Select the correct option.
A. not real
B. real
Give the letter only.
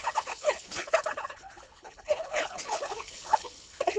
A